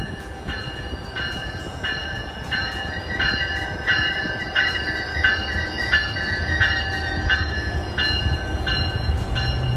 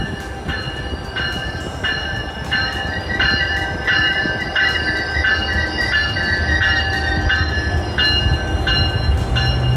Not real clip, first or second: first